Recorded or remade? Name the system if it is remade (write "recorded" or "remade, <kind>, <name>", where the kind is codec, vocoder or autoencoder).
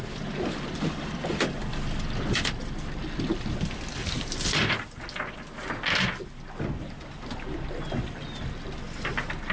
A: recorded